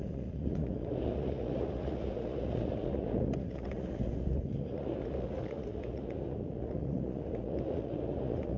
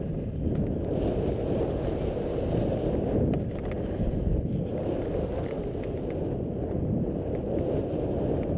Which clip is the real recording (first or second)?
second